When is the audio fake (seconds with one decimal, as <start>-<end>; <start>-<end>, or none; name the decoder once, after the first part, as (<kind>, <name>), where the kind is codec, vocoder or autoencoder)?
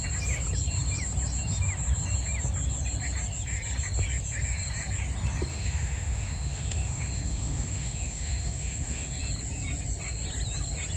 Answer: 5.5-9.2 (autoencoder, DAC-VAE)